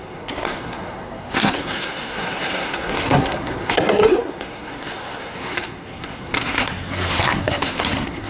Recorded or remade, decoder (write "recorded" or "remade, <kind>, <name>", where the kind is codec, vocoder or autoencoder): remade, codec, SNAC